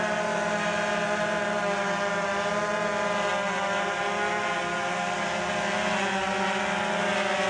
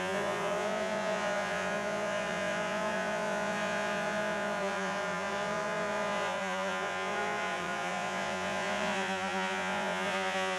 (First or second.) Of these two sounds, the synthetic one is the second